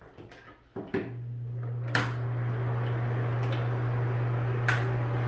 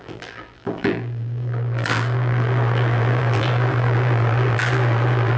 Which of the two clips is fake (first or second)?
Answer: second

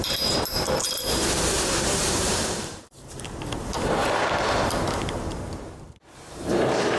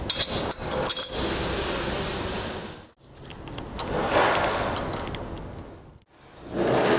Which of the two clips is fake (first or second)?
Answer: first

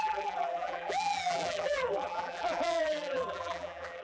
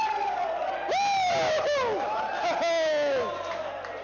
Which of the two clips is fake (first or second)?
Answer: first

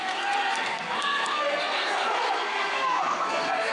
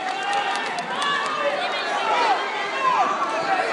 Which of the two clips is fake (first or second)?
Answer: first